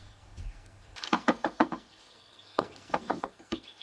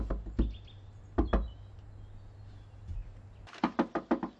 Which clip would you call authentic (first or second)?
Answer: second